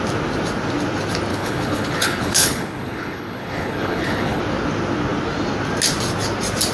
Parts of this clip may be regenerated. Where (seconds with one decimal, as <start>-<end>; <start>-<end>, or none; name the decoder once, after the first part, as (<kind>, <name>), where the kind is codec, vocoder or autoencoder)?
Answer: 1.3-4.4 (codec, HILCodec)